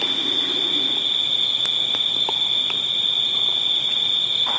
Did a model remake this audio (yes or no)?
no